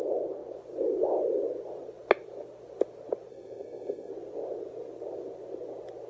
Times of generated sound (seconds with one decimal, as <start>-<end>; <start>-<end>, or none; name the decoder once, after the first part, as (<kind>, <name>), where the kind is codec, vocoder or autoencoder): 3.3-4.1 (codec, SNAC)